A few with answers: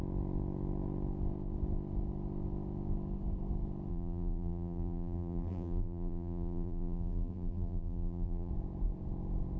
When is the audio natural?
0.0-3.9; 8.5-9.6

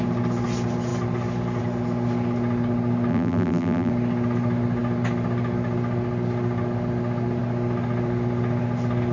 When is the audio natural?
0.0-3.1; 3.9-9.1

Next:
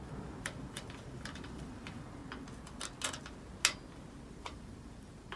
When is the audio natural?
2.2-4.3

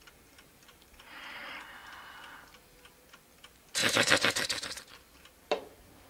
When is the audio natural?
1.8-3.1; 3.8-4.8

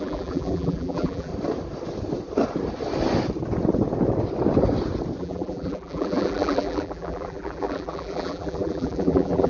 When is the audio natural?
1.3-5.2

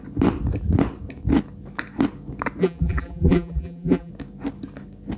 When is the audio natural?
0.0-2.6; 4.1-5.2